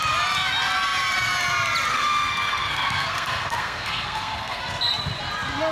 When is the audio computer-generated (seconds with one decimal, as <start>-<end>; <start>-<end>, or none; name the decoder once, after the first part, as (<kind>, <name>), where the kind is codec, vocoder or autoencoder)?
1.9-4.8 (codec, SNAC)